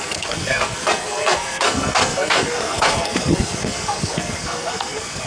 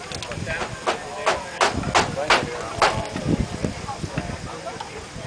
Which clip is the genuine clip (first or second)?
second